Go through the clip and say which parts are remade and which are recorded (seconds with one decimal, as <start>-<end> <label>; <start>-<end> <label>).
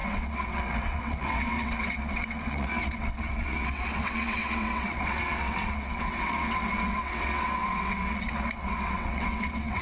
0.0-9.8 remade